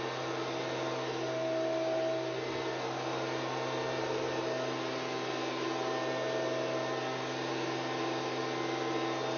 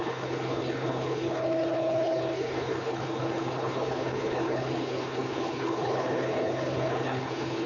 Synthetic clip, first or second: second